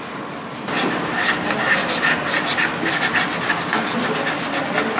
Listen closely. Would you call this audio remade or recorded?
recorded